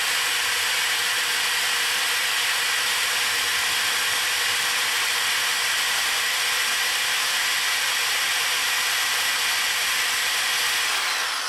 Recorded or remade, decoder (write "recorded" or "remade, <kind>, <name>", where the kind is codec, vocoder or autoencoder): recorded